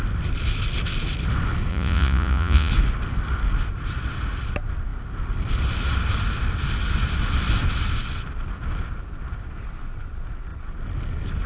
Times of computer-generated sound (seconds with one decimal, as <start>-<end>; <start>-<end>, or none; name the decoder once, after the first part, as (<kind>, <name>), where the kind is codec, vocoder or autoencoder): 1.7-2.7 (vocoder, Vocos)